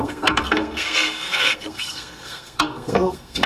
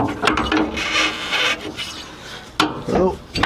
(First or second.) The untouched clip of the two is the second